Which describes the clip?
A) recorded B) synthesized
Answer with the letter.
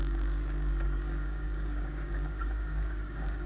B